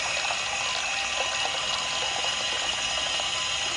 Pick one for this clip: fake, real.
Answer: real